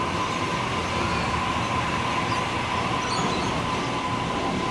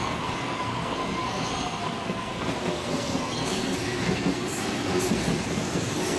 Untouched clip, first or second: first